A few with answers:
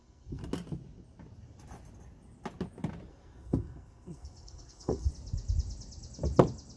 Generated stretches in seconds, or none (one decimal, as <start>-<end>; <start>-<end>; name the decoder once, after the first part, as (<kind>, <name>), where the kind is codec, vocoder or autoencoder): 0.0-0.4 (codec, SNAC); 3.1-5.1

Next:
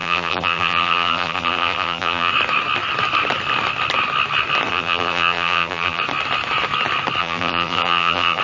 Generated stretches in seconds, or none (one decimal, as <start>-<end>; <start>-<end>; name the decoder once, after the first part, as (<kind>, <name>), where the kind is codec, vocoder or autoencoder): 0.0-2.3 (vocoder, BigVGAN v2); 4.7-6.0; 7.2-8.4

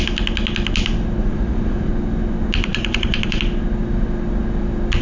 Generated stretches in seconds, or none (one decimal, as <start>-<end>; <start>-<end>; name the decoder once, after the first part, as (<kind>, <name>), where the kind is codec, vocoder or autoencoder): 1.2-1.9 (vocoder, Vocos); 2.7-3.4

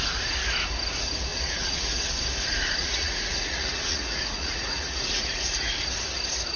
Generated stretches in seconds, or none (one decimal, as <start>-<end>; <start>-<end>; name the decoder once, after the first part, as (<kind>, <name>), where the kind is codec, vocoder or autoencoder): 1.3-1.9 (vocoder, Vocos); 2.8-5.8

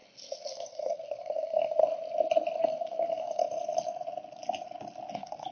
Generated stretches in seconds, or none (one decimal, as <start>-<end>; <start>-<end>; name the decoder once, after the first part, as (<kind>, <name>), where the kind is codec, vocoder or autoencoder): 0.5-1.8 (codec, SNAC); 2.6-3.4; 5.1-5.5